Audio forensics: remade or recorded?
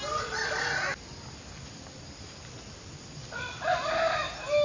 recorded